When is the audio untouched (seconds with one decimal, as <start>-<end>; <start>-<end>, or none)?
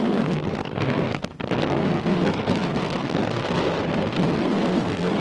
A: 1.2-1.7